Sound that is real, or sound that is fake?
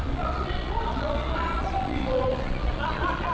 fake